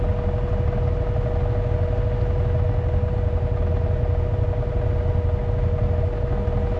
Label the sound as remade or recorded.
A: recorded